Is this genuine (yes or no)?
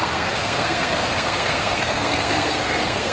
no